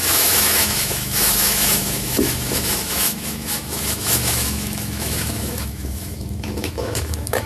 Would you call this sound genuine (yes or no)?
no